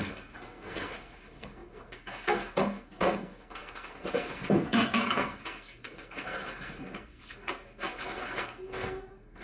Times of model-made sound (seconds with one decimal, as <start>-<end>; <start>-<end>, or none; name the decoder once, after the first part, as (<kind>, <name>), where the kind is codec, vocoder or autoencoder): 0.0-9.4 (codec, SNAC)